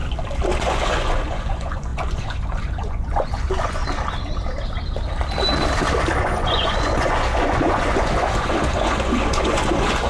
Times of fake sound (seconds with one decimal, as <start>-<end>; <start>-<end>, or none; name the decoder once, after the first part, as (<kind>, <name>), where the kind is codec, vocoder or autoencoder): 0.6-3.8 (vocoder, Vocos); 6.2-10.1